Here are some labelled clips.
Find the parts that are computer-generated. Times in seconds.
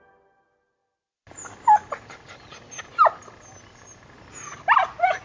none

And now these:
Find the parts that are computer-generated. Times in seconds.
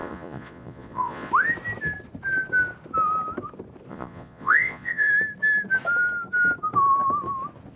0.0-1.3 (vocoder, Vocos); 3.9-5.1